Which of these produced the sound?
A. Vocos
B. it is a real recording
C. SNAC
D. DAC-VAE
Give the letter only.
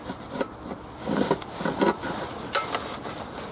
B